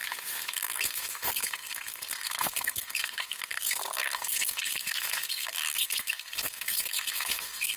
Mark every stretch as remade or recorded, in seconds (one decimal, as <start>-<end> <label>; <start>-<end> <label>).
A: 0.0-7.8 remade